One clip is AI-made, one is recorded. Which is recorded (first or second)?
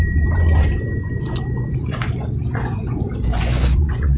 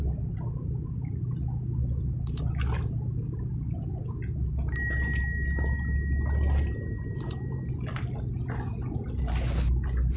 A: second